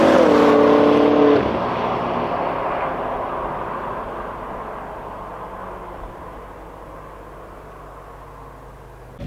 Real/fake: real